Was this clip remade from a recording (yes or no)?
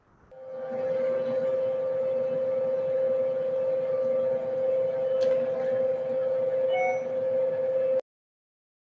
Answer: no